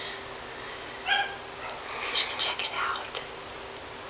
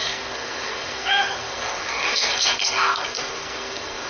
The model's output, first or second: second